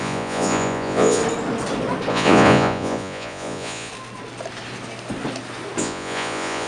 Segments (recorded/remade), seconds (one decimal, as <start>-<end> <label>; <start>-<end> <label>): 0.0-1.2 remade; 1.2-2.1 recorded; 2.1-3.9 remade; 3.9-5.8 recorded; 5.8-6.7 remade